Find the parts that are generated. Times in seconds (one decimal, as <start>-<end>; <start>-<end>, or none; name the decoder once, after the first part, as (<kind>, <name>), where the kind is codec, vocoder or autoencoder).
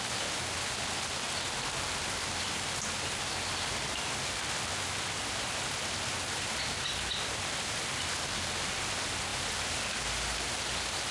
none